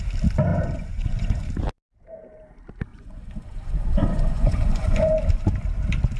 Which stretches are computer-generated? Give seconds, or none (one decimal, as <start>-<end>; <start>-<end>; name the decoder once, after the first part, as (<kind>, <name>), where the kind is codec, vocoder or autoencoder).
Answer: 0.5-1.5 (vocoder, Vocos); 2.9-5.1